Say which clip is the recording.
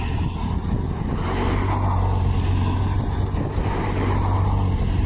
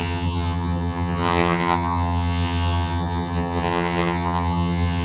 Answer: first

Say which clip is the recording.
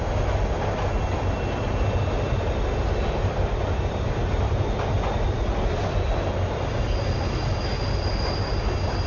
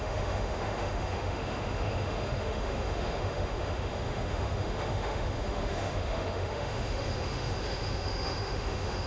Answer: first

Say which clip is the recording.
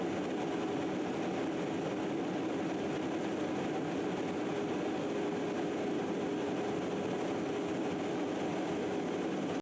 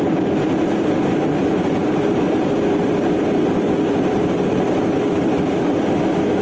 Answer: first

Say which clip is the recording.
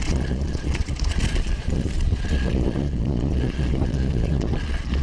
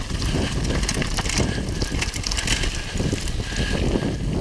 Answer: second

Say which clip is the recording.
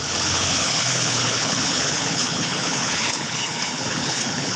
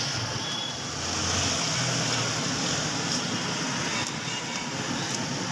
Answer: second